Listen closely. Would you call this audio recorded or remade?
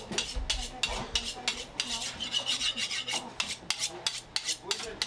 recorded